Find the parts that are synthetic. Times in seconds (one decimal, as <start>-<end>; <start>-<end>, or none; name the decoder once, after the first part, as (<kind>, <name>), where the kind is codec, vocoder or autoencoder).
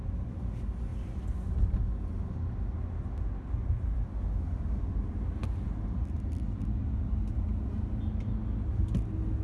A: none